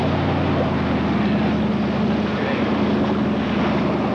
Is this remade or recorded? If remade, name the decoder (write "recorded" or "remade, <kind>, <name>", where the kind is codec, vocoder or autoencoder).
recorded